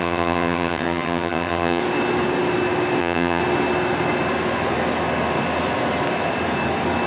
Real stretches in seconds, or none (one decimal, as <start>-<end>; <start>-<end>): 1.8-3.0; 3.4-7.1